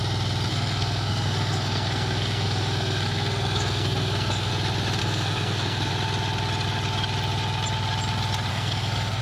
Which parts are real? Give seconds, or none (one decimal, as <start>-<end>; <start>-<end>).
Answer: 0.0-0.5; 4.5-5.0; 5.9-8.5